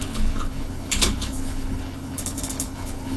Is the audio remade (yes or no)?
yes